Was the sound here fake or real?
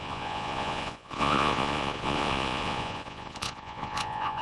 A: fake